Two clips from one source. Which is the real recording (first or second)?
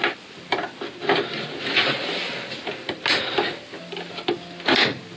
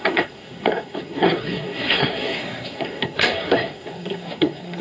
first